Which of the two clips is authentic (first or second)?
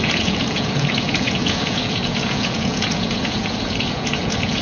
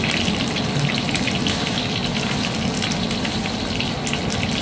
second